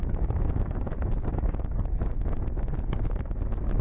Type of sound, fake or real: fake